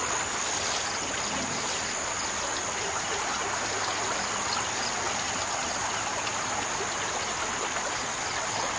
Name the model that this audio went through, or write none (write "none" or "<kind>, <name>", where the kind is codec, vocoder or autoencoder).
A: none